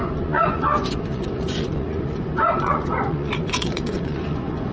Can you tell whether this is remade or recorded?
remade